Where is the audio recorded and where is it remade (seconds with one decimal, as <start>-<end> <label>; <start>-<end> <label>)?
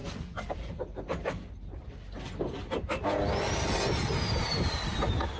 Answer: 0.0-5.4 recorded